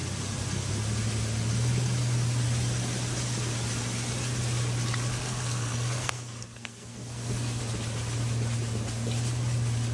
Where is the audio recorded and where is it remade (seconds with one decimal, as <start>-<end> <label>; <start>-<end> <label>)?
0.0-5.2 recorded; 5.2-7.6 remade; 7.6-9.9 recorded